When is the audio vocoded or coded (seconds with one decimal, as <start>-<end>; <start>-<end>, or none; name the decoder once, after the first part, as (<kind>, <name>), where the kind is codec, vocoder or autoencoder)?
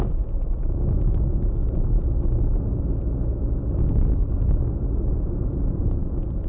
0.0-1.6 (vocoder, Vocos); 5.1-6.5